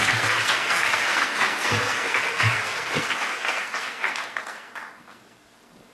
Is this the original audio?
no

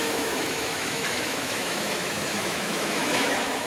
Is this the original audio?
no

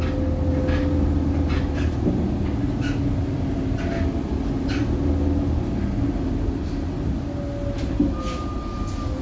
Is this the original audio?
yes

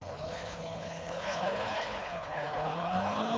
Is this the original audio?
no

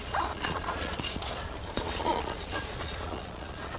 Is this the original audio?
no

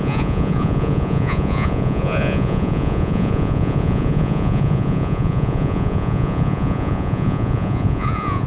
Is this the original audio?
no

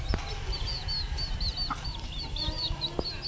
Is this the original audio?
yes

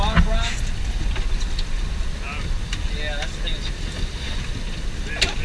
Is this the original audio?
yes